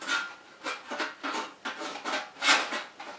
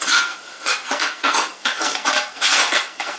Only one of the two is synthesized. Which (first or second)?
second